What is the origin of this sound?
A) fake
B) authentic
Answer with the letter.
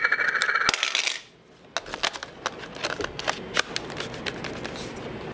B